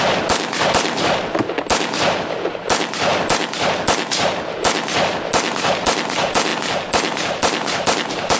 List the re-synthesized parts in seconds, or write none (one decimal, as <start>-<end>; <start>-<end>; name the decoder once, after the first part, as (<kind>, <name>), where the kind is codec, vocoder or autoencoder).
none